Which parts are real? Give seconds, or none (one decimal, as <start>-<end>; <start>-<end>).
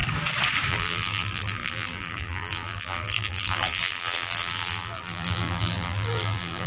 0.0-0.7